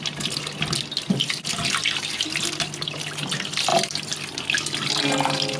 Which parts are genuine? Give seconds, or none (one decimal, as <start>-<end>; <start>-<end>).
0.0-5.6